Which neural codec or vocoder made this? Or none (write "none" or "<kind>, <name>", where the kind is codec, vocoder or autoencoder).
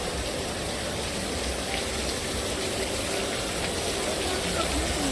none